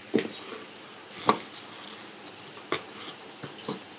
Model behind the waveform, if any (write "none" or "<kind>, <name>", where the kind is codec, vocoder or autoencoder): none